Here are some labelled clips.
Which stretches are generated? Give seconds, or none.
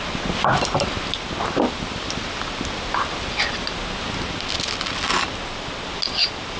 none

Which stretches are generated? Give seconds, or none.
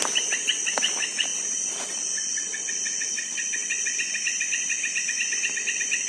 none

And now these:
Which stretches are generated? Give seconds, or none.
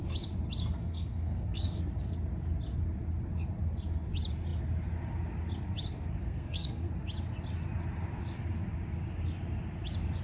0.6-1.8 (codec, SNAC); 6.2-6.9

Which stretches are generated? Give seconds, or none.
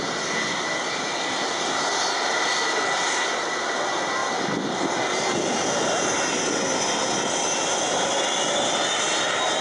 none